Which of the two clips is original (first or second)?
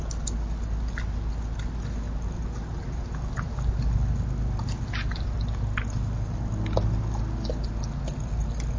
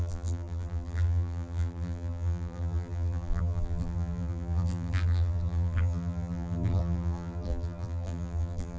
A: first